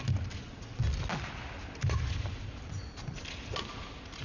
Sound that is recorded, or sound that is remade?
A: recorded